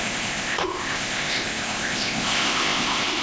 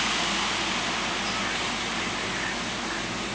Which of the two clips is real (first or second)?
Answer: second